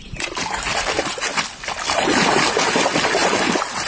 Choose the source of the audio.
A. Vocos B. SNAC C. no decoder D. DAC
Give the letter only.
C